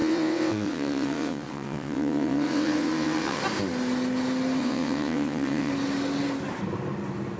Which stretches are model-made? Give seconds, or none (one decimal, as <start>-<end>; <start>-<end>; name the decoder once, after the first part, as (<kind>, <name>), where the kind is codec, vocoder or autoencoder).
0.0-3.4 (vocoder, WaveNeXt); 4.6-5.7